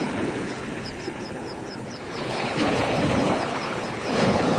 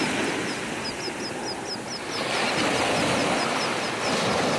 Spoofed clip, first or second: first